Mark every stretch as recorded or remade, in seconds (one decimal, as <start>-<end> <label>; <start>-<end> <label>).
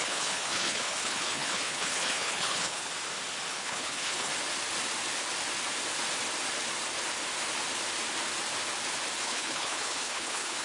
0.0-2.9 remade; 2.9-3.5 recorded; 3.5-4.3 remade; 4.3-9.2 recorded; 9.2-10.6 remade